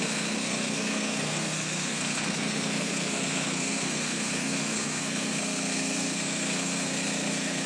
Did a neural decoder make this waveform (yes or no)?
yes